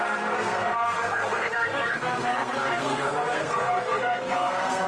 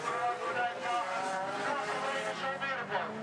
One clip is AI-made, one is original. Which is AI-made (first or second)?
first